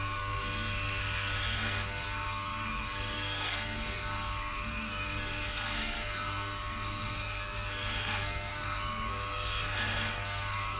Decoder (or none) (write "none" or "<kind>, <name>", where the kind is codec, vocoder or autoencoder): codec, SNAC